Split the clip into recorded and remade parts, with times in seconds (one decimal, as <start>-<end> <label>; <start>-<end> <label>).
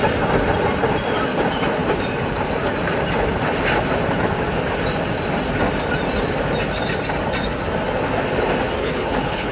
0.0-8.8 recorded; 8.8-9.5 remade